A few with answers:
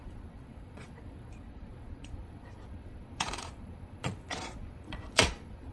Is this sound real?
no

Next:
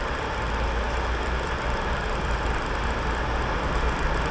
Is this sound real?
yes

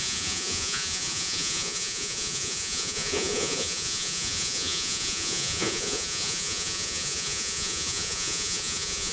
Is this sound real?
no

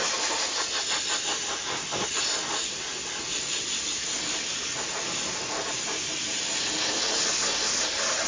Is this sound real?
yes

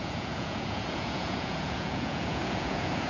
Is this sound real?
no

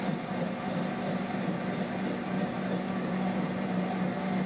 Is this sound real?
yes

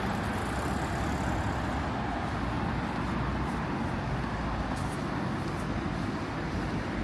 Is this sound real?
yes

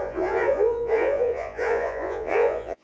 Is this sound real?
no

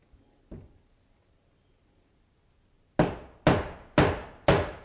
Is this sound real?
yes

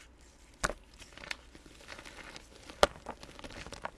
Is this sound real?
yes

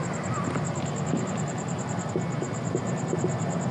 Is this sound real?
yes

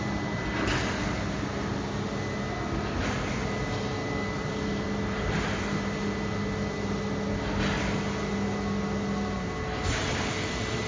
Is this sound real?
yes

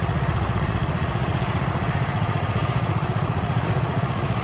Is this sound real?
no